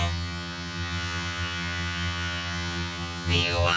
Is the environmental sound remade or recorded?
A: remade